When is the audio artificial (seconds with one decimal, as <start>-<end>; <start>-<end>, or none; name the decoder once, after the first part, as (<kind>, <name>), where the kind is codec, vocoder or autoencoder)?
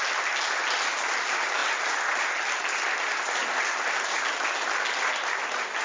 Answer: none